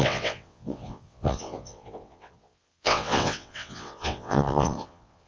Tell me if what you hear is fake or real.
fake